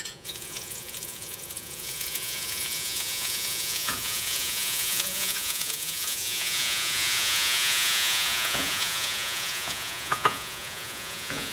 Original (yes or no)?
no